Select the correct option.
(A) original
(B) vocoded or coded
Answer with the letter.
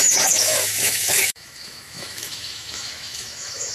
B